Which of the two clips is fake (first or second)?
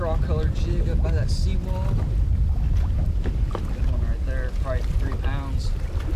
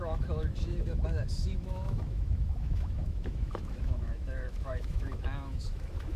second